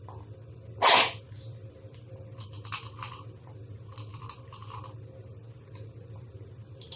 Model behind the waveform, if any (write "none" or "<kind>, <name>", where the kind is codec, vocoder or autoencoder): none